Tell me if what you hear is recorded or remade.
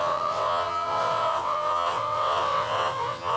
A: remade